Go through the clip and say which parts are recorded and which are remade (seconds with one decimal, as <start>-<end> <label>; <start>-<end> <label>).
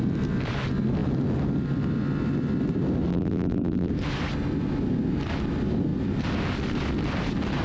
0.0-3.1 recorded; 3.1-3.9 remade; 3.9-7.6 recorded